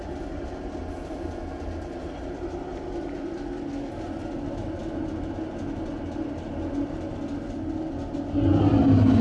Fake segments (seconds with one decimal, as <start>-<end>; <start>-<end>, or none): none